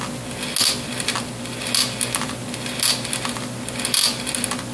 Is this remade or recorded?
recorded